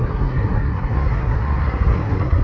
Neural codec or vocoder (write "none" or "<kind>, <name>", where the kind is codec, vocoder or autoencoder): codec, SNAC